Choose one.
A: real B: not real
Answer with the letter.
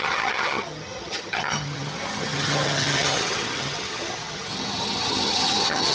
B